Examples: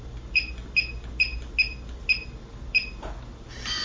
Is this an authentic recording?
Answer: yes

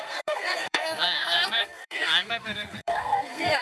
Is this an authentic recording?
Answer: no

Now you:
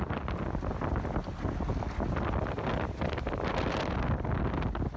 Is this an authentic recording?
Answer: yes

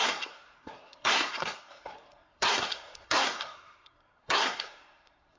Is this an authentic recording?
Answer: no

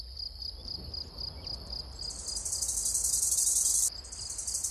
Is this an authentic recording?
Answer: yes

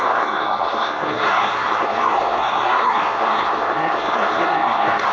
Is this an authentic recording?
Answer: no